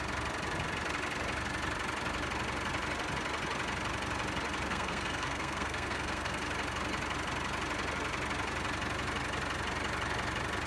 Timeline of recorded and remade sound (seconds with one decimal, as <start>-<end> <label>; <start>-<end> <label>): 0.0-4.7 recorded; 4.7-6.4 remade; 6.4-10.7 recorded